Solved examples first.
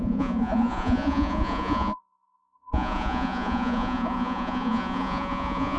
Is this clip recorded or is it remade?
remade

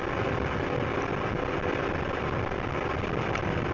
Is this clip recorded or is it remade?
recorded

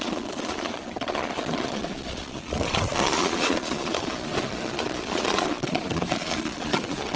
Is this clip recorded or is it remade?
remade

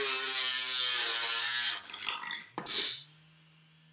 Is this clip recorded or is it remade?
recorded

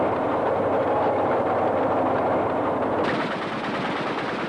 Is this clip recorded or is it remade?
recorded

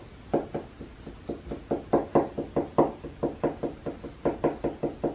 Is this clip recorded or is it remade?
recorded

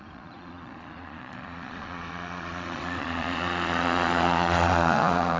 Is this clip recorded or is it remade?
remade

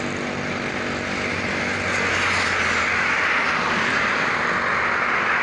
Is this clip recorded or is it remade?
recorded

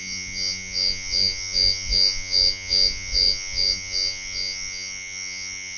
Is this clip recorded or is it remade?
remade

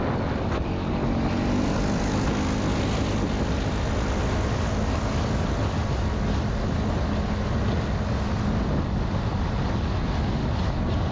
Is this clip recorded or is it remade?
recorded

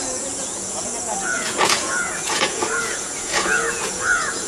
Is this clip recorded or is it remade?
remade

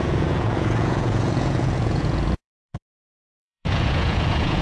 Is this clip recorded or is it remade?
remade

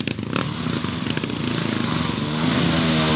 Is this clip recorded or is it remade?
recorded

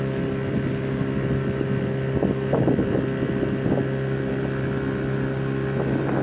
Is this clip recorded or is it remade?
recorded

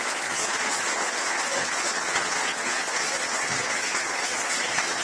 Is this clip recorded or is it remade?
remade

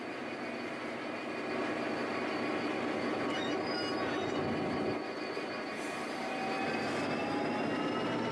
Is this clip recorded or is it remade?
recorded